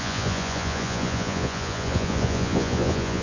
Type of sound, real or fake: fake